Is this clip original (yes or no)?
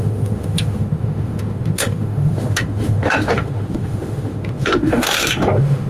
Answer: no